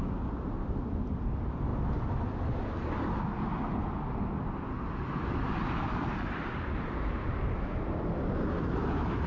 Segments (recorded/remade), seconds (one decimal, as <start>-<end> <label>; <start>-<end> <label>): 0.0-9.3 recorded